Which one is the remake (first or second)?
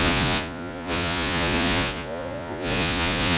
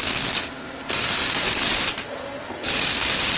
first